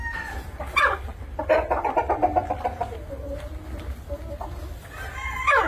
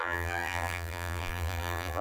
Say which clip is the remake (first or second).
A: second